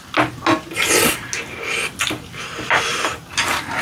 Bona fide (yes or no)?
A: yes